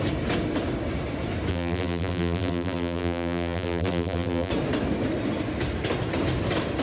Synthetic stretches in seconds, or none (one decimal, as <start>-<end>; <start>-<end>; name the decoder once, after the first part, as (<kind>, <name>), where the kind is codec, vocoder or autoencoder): 1.5-4.5 (vocoder, BigVGAN v2)